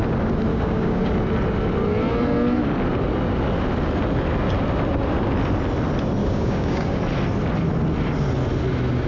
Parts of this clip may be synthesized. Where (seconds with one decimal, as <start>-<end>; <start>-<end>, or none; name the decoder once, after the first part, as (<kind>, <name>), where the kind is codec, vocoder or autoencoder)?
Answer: 0.5-1.1 (codec, DAC); 6.2-7.0